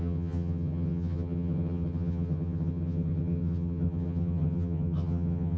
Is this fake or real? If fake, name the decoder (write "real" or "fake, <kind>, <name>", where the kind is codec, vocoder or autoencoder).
fake, vocoder, HiFi-GAN